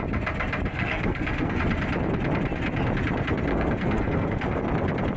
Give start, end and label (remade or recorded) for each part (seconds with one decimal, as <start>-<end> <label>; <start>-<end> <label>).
0.0-0.7 recorded; 0.7-1.6 remade; 1.6-3.5 recorded; 3.5-4.6 remade; 4.6-5.2 recorded